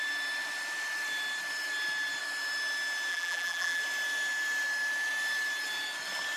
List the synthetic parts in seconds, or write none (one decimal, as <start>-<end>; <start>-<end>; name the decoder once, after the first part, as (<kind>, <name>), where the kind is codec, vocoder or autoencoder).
3.1-3.8 (vocoder, BigVGAN v2)